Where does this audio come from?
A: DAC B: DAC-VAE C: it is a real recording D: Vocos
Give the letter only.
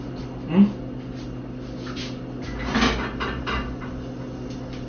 C